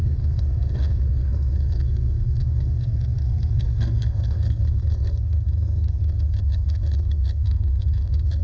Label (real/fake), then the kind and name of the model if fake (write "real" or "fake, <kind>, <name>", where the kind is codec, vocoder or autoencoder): fake, codec, SNAC